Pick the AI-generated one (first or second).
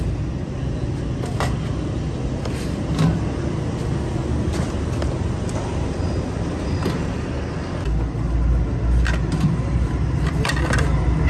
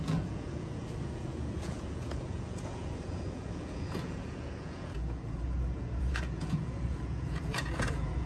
second